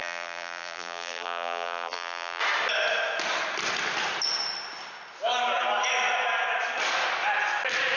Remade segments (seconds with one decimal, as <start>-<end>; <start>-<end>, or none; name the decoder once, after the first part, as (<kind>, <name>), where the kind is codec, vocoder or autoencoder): 0.0-2.4 (vocoder, BigVGAN v2)